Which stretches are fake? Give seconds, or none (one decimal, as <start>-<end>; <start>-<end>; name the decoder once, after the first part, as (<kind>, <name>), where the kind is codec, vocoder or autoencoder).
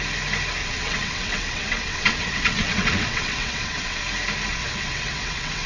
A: 0.6-4.0 (vocoder, WaveNeXt); 4.5-5.7